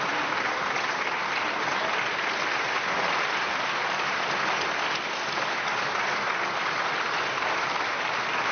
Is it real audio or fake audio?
real